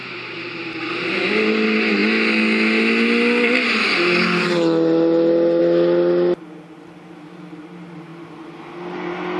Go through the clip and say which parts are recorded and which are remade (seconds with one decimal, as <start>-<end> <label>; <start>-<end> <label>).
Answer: 0.0-1.3 remade; 1.3-9.4 recorded